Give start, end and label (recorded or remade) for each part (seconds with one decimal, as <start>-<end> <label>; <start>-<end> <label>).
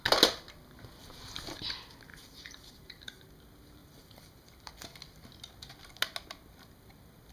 0.0-2.1 recorded; 2.1-3.2 remade; 3.2-3.8 recorded; 3.8-4.7 remade; 4.7-7.3 recorded